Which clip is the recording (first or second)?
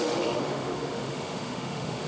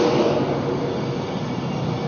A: second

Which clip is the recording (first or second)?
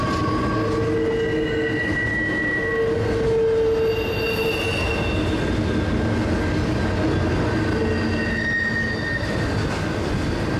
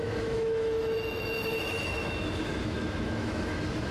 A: first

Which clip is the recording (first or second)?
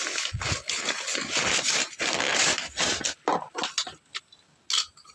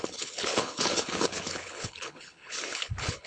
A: first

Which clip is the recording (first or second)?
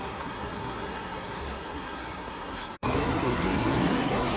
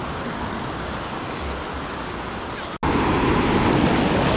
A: second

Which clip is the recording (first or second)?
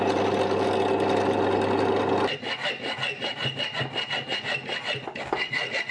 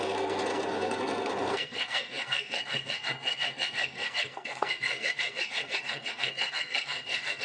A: first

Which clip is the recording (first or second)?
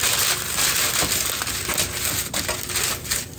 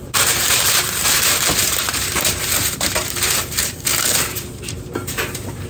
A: first